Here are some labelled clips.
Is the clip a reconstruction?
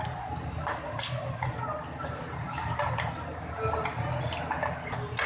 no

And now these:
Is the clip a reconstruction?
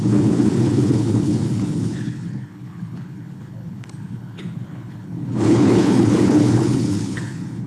yes